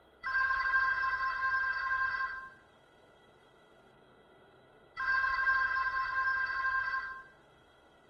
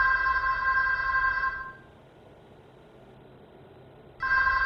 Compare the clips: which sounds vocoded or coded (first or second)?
first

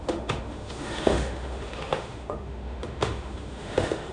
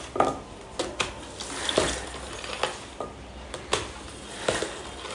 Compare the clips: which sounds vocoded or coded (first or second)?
first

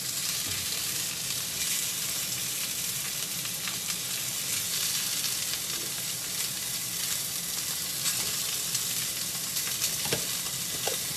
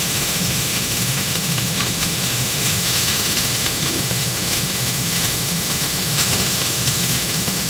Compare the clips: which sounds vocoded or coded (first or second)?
second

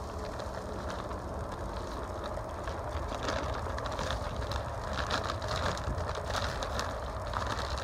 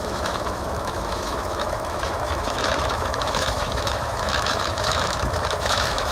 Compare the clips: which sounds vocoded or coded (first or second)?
second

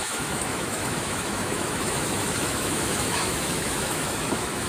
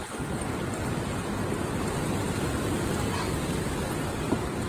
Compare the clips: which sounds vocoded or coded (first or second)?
first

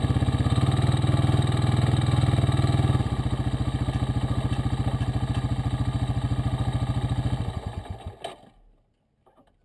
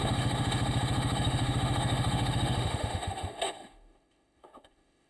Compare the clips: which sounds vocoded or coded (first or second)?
second